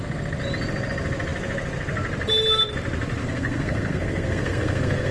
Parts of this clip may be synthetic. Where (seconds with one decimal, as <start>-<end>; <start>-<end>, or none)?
3.2-5.1